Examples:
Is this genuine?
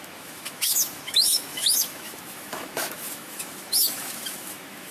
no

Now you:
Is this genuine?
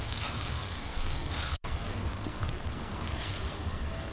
no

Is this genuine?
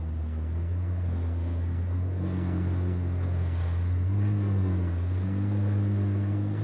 no